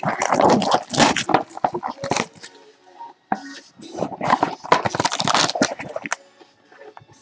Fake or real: real